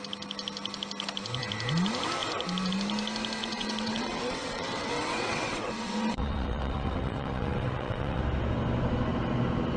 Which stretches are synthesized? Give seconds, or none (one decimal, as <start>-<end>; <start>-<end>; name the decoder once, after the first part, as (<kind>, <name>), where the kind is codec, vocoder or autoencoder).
3.4-8.2 (vocoder, WaveNeXt)